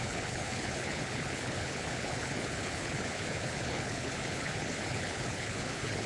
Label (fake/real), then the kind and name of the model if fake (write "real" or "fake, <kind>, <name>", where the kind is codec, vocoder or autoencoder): fake, codec, HILCodec